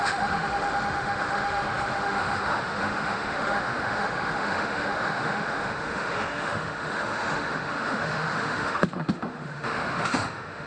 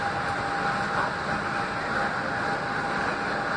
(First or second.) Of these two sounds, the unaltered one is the second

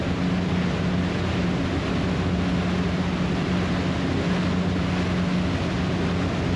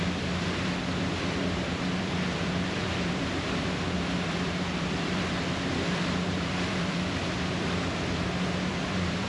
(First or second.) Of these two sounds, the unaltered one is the first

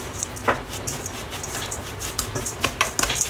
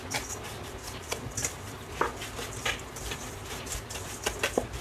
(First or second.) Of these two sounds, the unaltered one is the first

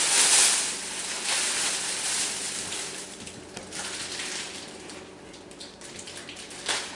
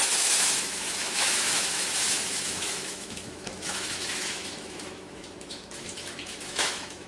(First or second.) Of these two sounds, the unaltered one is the first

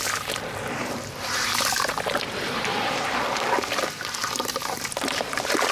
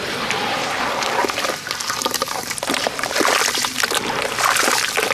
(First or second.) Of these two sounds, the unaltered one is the first